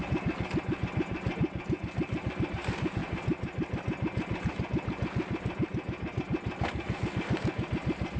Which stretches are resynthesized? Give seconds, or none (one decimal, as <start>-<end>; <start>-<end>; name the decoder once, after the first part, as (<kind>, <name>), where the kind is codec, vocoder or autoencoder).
none